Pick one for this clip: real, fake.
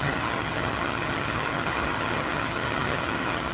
fake